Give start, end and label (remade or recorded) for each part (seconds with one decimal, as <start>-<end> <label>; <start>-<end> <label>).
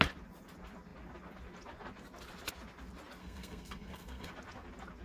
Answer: 0.0-3.2 recorded; 3.2-4.3 remade; 4.3-5.0 recorded